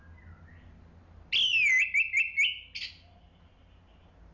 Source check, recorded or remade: recorded